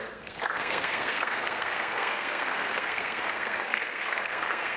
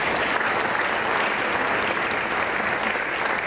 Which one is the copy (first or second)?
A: first